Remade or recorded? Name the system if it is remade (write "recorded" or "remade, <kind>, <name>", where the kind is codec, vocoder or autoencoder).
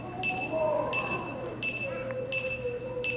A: recorded